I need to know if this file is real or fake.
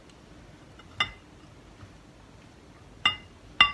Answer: real